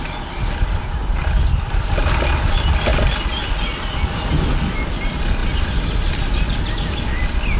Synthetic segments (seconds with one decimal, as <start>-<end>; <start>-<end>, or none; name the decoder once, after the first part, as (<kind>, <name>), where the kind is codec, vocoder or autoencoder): 1.0-2.1 (vocoder, BigVGAN v2)